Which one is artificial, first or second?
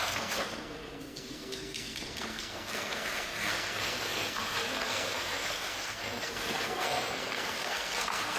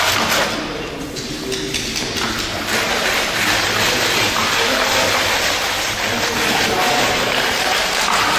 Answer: first